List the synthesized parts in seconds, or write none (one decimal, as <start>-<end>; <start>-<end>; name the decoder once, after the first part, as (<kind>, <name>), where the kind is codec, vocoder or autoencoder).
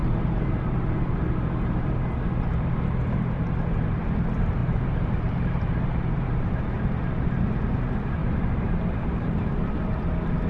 0.0-1.9 (vocoder, BigVGAN v2); 4.6-6.8; 8.2-10.0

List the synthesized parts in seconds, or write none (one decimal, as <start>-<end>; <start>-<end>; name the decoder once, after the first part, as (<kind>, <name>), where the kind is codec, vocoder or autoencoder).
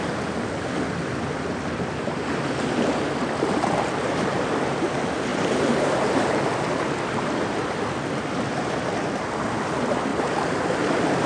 5.3-6.4 (vocoder, BigVGAN v2); 10.1-10.7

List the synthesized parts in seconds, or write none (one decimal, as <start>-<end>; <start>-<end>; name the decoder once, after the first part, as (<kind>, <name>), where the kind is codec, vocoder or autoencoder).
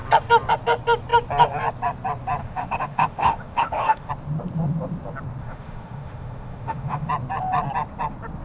2.4-4.1 (autoencoder, DAC-VAE); 5.4-7.1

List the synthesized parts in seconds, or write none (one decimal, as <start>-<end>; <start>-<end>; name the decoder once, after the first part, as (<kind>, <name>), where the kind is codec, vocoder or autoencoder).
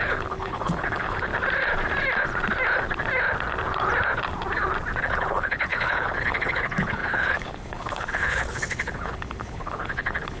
0.0-1.3 (codec, HILCodec); 5.0-10.4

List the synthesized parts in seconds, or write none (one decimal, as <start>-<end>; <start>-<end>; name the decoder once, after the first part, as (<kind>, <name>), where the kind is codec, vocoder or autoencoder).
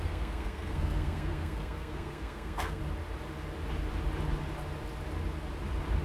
0.0-2.8 (codec, SNAC)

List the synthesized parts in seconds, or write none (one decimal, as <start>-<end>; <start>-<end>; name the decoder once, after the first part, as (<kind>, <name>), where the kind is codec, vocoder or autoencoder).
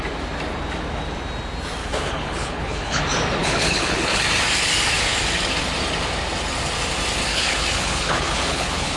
1.8-3.0 (codec, HILCodec); 3.4-4.2; 7.3-9.0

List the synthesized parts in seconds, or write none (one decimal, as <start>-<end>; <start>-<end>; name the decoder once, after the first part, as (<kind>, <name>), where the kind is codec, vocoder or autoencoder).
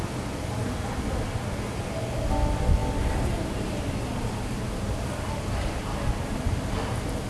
none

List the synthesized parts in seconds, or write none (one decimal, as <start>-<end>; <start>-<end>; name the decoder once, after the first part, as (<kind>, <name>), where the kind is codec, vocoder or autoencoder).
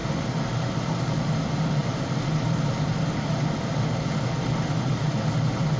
none